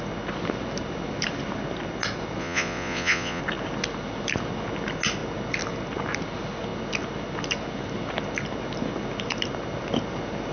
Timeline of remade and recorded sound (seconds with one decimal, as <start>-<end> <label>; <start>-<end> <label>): 0.0-2.4 recorded; 2.4-3.4 remade; 3.4-10.5 recorded